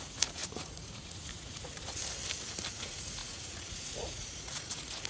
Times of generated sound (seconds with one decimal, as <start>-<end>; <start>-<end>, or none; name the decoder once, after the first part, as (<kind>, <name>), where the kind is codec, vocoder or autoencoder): 0.0-2.0 (vocoder, Vocos); 2.7-5.1